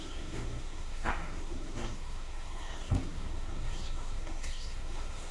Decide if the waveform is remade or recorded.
remade